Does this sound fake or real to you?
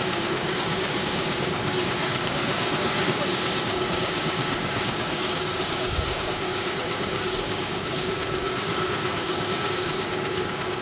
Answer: fake